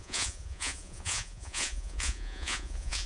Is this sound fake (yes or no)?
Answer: yes